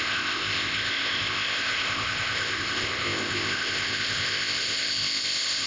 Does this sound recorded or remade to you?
remade